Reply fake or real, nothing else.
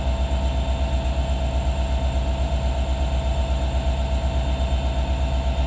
real